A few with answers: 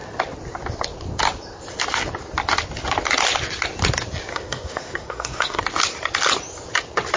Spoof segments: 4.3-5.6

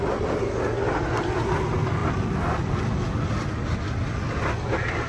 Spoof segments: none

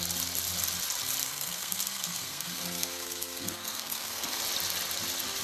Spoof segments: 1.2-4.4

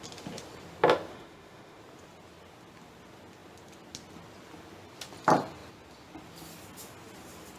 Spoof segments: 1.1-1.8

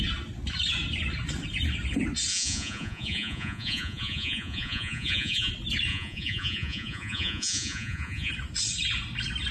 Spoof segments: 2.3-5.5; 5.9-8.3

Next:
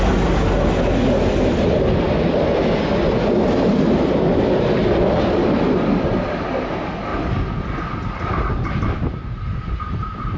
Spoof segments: none

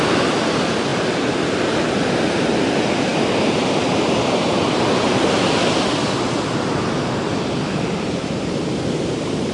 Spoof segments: none